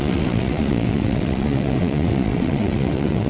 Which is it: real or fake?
fake